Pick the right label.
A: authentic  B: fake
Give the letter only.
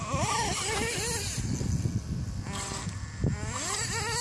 A